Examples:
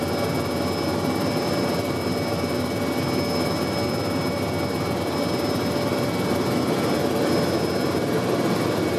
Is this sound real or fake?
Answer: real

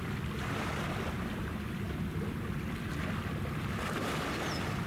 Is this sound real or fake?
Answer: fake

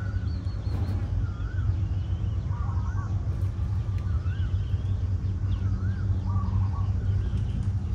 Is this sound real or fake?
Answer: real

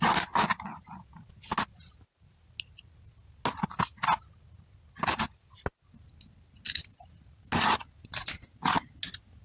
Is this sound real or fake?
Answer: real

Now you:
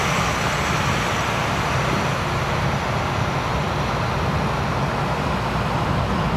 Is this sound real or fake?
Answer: real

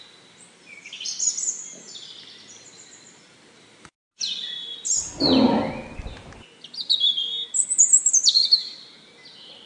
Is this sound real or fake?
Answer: real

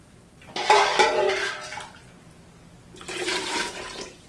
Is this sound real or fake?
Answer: fake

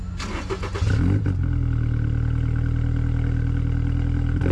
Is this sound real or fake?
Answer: real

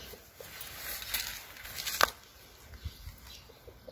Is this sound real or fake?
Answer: real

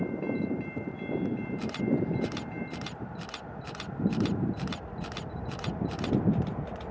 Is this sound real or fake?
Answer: fake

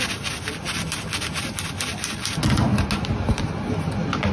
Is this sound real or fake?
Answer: real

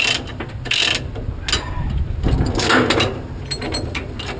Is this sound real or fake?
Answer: real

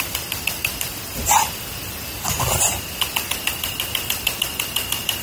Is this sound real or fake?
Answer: fake